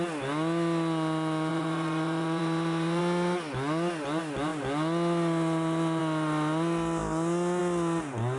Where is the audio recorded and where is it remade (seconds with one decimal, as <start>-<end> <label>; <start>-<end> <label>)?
0.0-1.5 recorded; 1.5-3.0 remade; 3.0-8.4 recorded